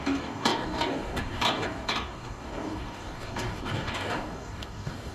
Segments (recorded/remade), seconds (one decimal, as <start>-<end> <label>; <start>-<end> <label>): 0.0-5.1 remade